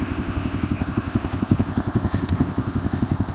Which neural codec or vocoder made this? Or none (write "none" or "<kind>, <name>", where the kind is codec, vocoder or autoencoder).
codec, ZipCodec